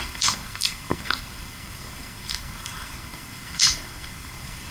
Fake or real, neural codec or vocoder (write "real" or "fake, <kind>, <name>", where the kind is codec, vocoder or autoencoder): fake, codec, SNAC